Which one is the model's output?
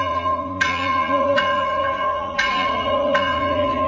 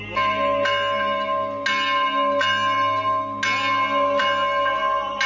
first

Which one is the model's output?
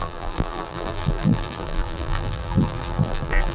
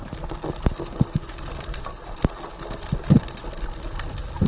first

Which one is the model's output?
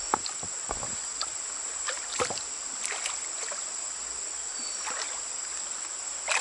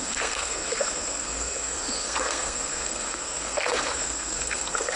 second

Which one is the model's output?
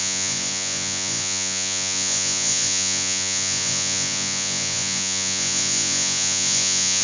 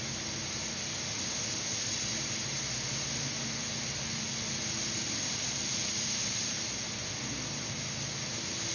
first